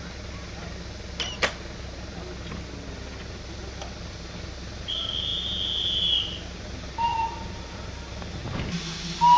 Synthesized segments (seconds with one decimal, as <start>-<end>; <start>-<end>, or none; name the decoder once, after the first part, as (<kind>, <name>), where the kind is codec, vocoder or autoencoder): none